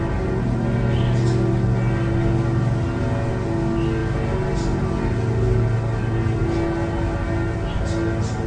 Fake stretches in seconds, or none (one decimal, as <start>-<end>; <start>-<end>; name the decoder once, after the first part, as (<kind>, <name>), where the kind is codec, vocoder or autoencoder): none